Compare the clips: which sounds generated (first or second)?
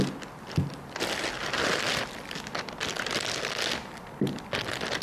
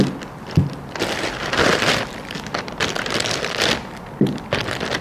second